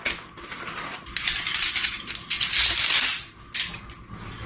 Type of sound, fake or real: real